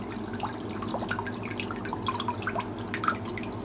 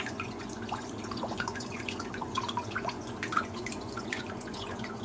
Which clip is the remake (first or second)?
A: second